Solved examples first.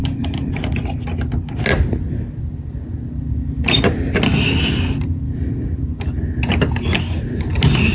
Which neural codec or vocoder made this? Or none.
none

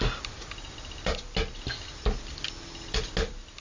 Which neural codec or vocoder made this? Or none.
none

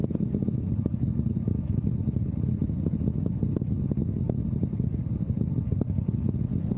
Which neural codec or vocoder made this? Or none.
none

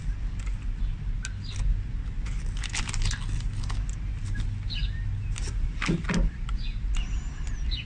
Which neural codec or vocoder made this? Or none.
none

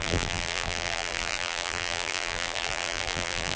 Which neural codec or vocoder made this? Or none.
vocoder, BigVGAN v2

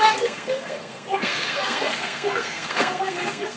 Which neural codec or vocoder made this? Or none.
codec, SNAC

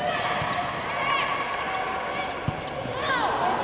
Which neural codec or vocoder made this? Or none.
none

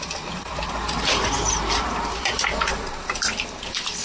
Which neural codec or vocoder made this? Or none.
vocoder, BigVGAN v2